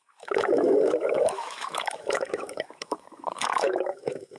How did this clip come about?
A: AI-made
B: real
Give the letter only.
A